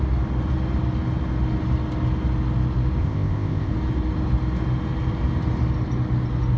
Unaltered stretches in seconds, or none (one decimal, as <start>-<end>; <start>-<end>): 0.0-3.0; 3.7-6.6